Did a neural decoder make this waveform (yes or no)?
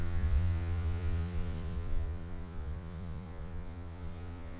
yes